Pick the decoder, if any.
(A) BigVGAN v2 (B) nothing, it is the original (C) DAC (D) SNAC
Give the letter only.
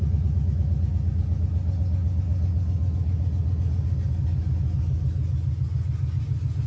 B